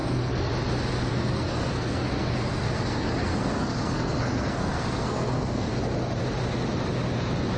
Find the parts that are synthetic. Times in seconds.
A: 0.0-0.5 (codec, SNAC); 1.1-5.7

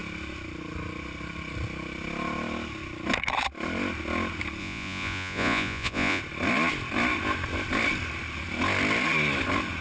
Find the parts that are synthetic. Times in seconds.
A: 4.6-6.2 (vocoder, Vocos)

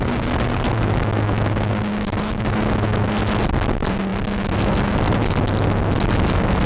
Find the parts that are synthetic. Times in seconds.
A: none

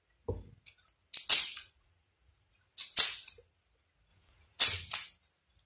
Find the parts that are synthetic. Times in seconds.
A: 1.3-2.5 (vocoder, Vocos); 4.1-4.6

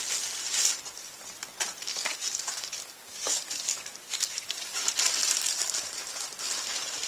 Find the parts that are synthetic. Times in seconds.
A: 1.9-4.9 (codec, DAC)

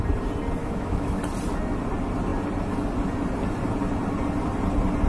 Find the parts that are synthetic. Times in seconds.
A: 0.6-1.2 (autoencoder, DAC-VAE)

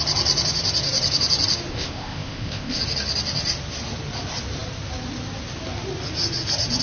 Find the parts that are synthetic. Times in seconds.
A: 1.7-2.8 (codec, ZipCodec)

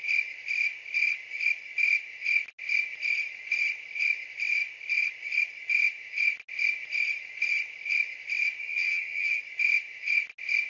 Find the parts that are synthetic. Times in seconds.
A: 8.6-9.4 (vocoder, HiFi-GAN)